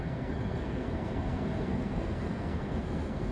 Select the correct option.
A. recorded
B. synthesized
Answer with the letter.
B